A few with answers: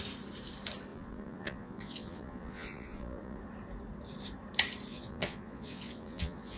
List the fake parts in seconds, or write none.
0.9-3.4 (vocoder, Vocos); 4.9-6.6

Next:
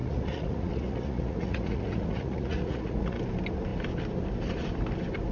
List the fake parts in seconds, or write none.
0.0-3.2 (vocoder, Vocos)